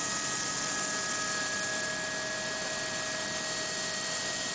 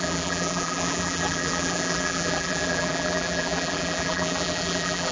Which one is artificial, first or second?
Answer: second